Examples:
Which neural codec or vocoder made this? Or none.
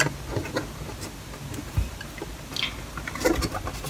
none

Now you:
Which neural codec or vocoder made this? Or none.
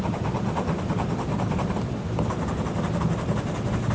none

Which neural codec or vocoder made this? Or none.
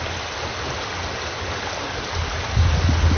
none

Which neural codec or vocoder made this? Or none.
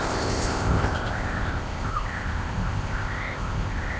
codec, ZipCodec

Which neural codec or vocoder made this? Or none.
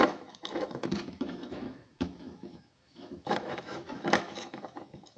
autoencoder, DAC-VAE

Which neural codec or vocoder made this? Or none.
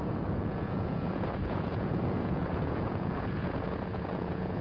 vocoder, Vocos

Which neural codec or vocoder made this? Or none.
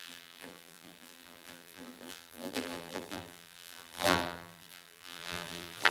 vocoder, BigVGAN v2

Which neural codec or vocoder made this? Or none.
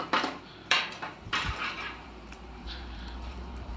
vocoder, BigVGAN v2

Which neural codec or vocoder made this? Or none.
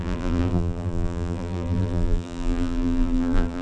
vocoder, BigVGAN v2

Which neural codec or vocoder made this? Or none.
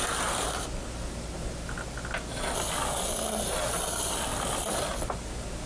none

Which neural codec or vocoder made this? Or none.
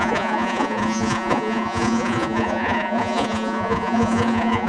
vocoder, Vocos